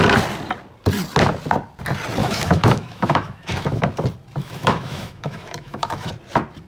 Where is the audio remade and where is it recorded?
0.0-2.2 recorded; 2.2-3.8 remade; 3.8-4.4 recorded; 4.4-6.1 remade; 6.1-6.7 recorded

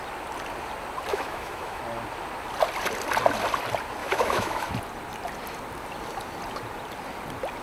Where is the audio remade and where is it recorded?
0.0-1.1 recorded; 1.1-1.8 remade; 1.8-4.0 recorded; 4.0-4.7 remade; 4.7-7.6 recorded

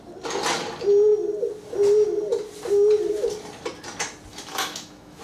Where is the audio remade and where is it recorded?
0.0-4.3 recorded; 4.3-5.2 remade

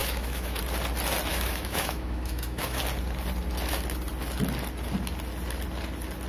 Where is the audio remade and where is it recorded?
0.0-0.6 remade; 0.6-1.3 recorded; 1.3-2.8 remade; 2.8-6.3 recorded

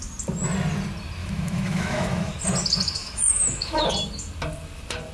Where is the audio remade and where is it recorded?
0.0-1.2 recorded; 1.2-2.4 remade; 2.4-3.0 recorded; 3.0-3.9 remade; 3.9-5.1 recorded

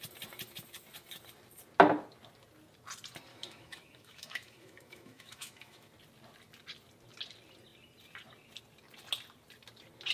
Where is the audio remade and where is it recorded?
0.0-3.3 recorded; 3.3-5.9 remade; 5.9-10.1 recorded

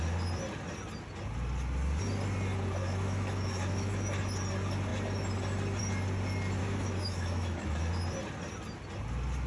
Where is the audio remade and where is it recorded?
0.0-2.8 recorded; 2.8-4.2 remade; 4.2-6.6 recorded; 6.6-7.9 remade; 7.9-9.5 recorded

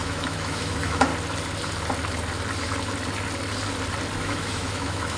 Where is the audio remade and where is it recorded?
0.0-1.1 remade; 1.1-4.2 recorded; 4.2-5.2 remade